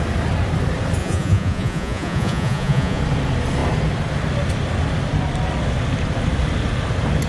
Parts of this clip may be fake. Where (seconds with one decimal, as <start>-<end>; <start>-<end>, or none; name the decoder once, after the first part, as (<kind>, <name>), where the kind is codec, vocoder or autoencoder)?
1.0-3.0 (vocoder, Vocos)